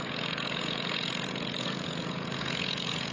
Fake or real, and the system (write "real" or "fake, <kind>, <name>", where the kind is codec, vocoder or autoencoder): fake, vocoder, Vocos